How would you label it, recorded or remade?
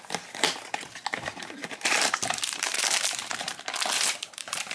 remade